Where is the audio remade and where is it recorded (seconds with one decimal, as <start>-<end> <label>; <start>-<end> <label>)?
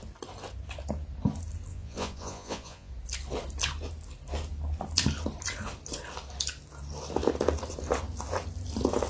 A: 0.0-1.7 recorded; 1.7-2.9 remade; 2.9-9.1 recorded